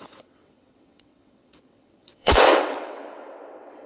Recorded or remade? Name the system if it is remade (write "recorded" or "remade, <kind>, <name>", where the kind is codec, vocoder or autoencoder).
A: remade, vocoder, WaveNeXt